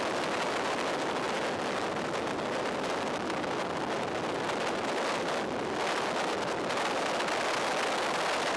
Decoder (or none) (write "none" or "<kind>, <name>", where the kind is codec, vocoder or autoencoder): none